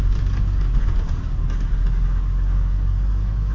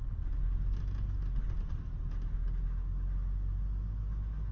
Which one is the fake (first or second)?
first